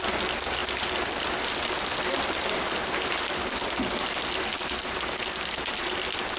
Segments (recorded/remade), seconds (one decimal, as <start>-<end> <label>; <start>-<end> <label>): 0.0-6.4 recorded